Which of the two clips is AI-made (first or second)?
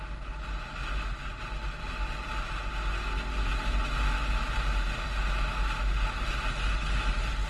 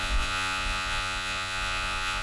second